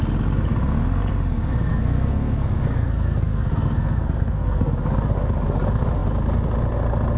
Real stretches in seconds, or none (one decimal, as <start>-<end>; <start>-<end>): 0.0-1.7; 4.7-7.2